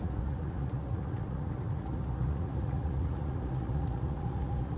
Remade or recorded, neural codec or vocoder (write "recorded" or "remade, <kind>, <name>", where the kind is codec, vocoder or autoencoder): remade, vocoder, Vocos